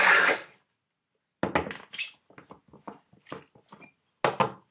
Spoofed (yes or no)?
no